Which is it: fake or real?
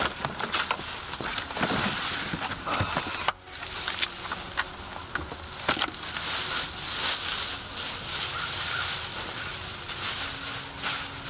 real